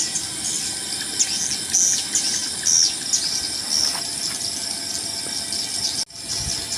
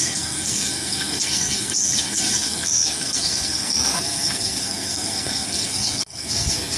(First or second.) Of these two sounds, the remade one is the second